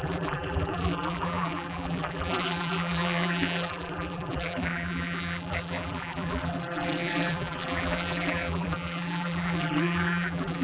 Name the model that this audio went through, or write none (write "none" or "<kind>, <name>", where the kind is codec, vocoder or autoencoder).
vocoder, BigVGAN v2